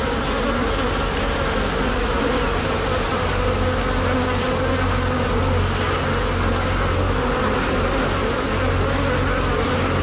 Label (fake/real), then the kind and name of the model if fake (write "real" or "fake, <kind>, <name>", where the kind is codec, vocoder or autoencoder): real